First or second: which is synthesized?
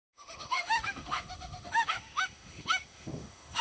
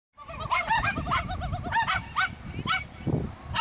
first